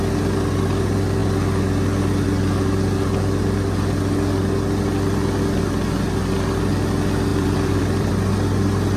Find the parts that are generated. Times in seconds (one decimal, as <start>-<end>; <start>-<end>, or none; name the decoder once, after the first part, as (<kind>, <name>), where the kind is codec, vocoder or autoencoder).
7.3-8.1 (vocoder, BigVGAN v2)